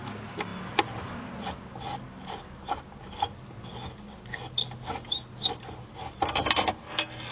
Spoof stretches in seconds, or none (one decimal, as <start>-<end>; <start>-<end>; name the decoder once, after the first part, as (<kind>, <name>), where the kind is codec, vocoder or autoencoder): none